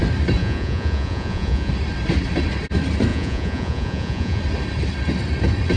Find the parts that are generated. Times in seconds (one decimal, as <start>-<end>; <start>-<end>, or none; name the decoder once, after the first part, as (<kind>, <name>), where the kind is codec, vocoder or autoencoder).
0.4-1.7 (vocoder, Vocos); 3.1-4.4